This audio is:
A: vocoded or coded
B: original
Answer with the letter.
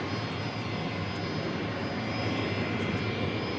B